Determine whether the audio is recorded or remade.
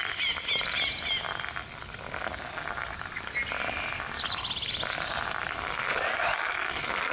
recorded